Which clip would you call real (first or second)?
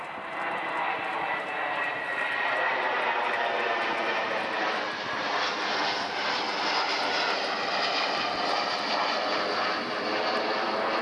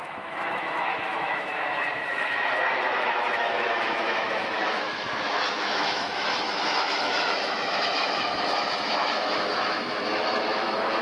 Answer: first